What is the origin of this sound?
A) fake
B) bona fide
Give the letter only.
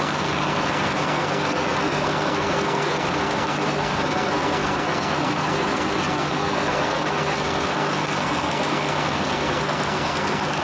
A